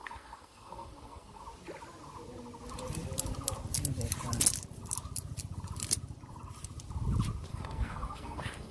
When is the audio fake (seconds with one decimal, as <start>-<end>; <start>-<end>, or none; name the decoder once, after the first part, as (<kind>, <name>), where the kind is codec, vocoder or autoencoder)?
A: 0.0-1.4 (codec, SNAC); 7.5-8.7